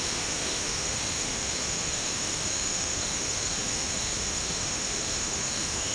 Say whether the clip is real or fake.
fake